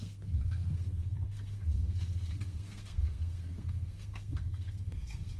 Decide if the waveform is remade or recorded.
remade